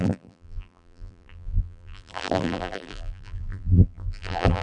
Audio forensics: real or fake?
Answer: fake